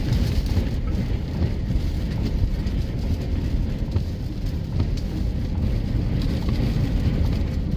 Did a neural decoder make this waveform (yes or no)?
no